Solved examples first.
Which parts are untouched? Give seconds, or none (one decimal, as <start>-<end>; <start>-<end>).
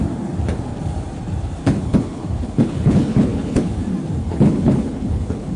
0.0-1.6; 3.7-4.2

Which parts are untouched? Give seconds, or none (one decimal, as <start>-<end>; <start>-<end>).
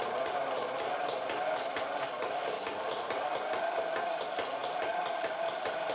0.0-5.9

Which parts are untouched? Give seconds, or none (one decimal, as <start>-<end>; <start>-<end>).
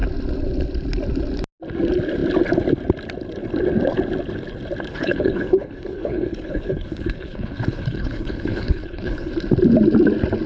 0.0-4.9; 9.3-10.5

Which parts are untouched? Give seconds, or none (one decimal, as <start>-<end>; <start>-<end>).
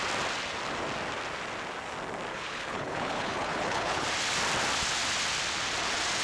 0.0-2.3; 4.1-6.2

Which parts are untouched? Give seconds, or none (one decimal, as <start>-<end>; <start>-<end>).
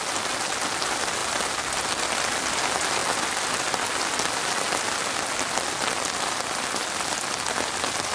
0.0-8.1